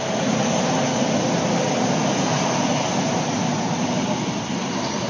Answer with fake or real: real